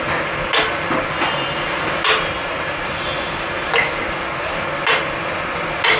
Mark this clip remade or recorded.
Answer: recorded